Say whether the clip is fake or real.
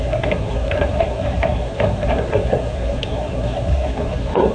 fake